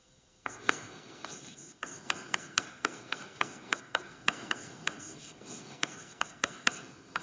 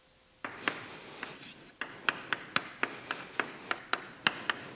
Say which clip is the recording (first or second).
second